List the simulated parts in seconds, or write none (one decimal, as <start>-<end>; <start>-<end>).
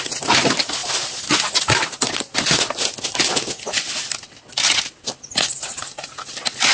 none